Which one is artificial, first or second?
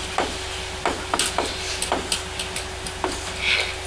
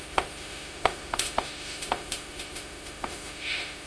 second